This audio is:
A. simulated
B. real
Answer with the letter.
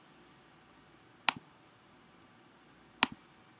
B